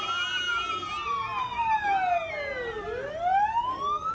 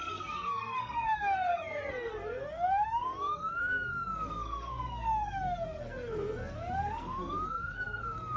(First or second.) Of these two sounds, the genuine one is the first